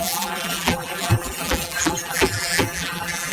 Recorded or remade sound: remade